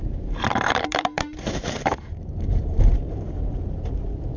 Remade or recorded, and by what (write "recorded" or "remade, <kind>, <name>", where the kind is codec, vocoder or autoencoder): remade, vocoder, BigVGAN v2